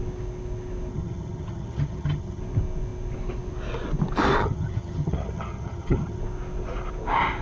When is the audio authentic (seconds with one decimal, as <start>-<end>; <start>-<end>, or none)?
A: 0.0-0.9; 2.4-4.4; 6.2-7.4